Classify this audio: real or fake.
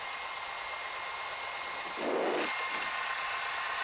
real